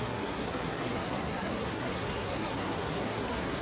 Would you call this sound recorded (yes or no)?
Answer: no